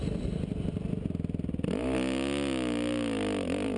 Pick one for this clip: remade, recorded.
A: recorded